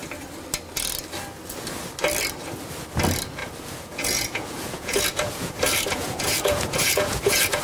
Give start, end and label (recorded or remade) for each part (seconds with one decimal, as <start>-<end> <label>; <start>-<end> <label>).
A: 0.0-3.4 recorded; 3.4-7.6 remade